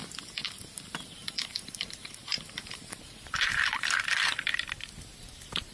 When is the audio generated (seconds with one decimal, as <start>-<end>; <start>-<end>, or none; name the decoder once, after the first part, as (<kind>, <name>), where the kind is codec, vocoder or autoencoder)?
0.0-4.3 (vocoder, BigVGAN v2); 5.2-5.7